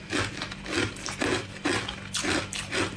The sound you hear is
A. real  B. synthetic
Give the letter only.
A